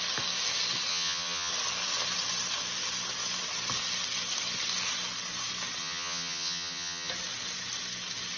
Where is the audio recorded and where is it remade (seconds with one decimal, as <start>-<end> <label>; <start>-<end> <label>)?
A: 0.0-0.9 recorded; 0.9-1.5 remade; 1.5-5.8 recorded; 5.8-7.1 remade; 7.1-8.4 recorded

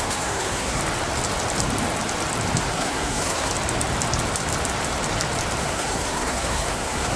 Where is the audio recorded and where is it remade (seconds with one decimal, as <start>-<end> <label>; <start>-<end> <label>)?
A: 0.0-0.8 remade; 0.8-2.6 recorded; 2.6-3.5 remade; 3.5-5.6 recorded; 5.6-7.2 remade

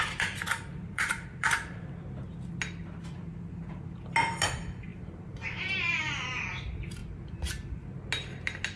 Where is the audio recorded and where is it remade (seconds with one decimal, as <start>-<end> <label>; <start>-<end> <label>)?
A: 0.0-0.7 recorded; 0.7-1.9 remade; 1.9-4.9 recorded; 4.9-5.8 remade; 5.8-8.8 recorded

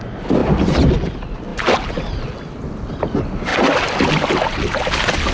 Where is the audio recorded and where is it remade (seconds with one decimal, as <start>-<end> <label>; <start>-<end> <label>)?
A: 0.0-1.5 recorded; 1.5-2.2 remade; 2.2-5.3 recorded

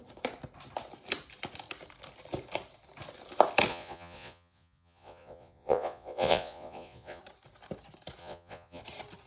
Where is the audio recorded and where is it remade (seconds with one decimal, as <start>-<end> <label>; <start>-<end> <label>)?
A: 0.0-3.7 recorded; 3.7-7.2 remade; 7.2-8.2 recorded; 8.2-8.8 remade; 8.8-9.3 recorded

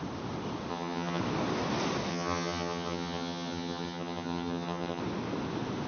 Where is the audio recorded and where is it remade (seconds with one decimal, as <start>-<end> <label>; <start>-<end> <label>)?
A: 0.0-0.7 recorded; 0.7-1.2 remade; 1.2-2.1 recorded; 2.1-5.0 remade; 5.0-5.9 recorded

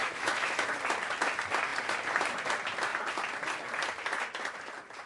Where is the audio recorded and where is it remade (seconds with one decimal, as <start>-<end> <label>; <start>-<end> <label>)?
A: 0.0-0.7 remade; 0.7-5.1 recorded

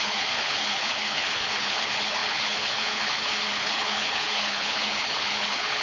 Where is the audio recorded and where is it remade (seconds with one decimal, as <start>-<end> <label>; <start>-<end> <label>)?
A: 0.0-5.8 remade